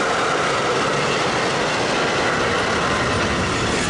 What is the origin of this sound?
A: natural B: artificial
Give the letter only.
A